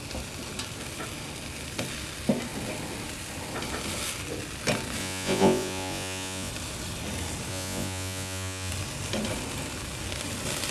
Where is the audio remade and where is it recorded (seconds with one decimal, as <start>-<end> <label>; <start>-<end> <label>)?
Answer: 0.0-5.0 recorded; 5.0-6.5 remade; 6.5-7.5 recorded; 7.5-8.7 remade; 8.7-10.7 recorded